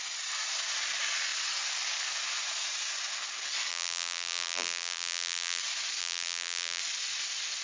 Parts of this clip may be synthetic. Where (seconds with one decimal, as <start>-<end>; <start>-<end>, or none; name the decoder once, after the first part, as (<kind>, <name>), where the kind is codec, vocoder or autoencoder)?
3.7-5.6 (vocoder, BigVGAN v2); 6.0-6.8